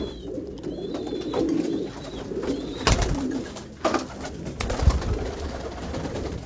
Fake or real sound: real